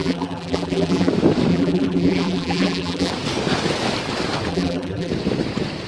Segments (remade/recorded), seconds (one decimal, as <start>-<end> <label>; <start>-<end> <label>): 0.0-1.1 remade; 1.1-1.5 recorded; 1.5-3.1 remade; 3.1-4.5 recorded; 4.5-5.1 remade; 5.1-5.9 recorded